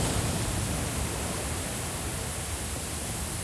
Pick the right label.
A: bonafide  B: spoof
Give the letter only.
A